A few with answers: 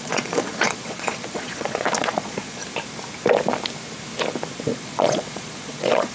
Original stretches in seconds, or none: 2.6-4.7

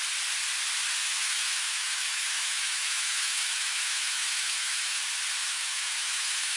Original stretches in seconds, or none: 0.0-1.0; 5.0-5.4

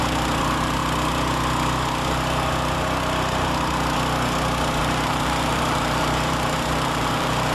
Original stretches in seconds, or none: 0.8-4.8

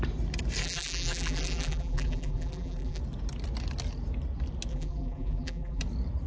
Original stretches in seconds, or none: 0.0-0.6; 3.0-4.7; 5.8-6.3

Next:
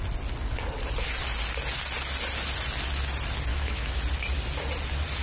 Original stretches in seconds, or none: 0.0-3.5; 4.0-5.2

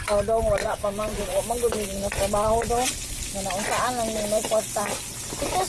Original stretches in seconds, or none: 0.0-0.6; 1.4-5.7

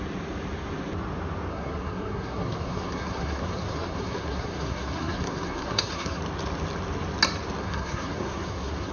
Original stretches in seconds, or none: 0.0-1.5; 6.2-7.6